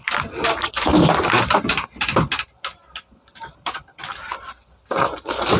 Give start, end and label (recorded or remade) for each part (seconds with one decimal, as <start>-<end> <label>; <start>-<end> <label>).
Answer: 0.0-5.6 recorded